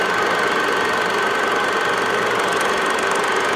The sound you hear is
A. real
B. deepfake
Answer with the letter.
A